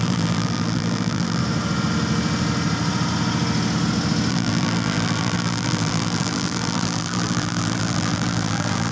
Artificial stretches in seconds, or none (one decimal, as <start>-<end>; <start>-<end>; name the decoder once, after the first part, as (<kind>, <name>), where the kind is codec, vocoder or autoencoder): 0.0-1.4 (vocoder, BigVGAN v2); 4.3-8.9